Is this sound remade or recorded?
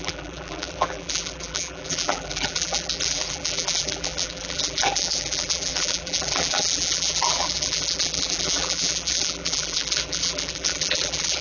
remade